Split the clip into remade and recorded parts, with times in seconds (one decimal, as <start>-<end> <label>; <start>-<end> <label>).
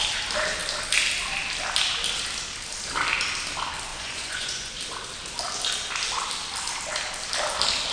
0.0-3.9 recorded; 3.9-4.8 remade; 4.8-7.9 recorded